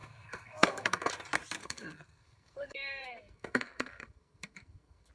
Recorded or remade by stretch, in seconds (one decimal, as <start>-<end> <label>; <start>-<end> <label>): 0.0-1.1 remade; 1.1-1.6 recorded; 1.6-5.1 remade

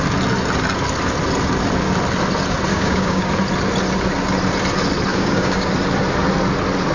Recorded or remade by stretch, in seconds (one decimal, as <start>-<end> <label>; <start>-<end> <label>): 0.0-2.7 recorded; 2.7-3.3 remade; 3.3-5.1 recorded; 5.1-5.7 remade; 5.7-6.9 recorded

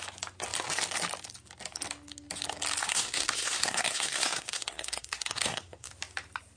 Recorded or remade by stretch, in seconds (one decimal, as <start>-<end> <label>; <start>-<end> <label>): 0.0-2.8 recorded; 2.8-5.9 remade; 5.9-6.6 recorded

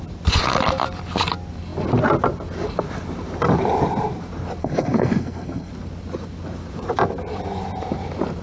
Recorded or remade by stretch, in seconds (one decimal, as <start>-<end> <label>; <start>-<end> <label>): 0.0-4.6 recorded; 4.6-5.7 remade; 5.7-8.4 recorded

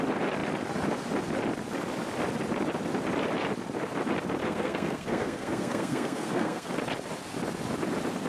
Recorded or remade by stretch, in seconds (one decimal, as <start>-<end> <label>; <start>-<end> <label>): 0.0-4.4 recorded; 4.4-6.7 remade; 6.7-8.3 recorded

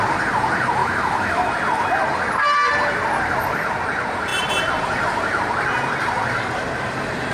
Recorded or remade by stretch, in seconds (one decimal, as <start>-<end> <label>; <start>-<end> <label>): 0.0-0.8 recorded; 0.8-1.5 remade; 1.5-7.3 recorded

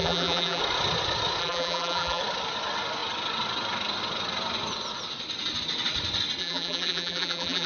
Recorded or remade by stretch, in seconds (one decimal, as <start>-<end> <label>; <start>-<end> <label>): 0.0-0.6 remade; 0.6-1.4 recorded; 1.4-2.2 remade; 2.2-6.4 recorded; 6.4-7.7 remade